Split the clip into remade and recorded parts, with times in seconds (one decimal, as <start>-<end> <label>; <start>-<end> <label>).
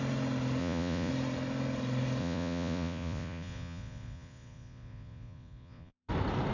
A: 0.0-0.6 recorded; 0.6-1.1 remade; 1.1-2.2 recorded; 2.2-6.1 remade; 6.1-6.5 recorded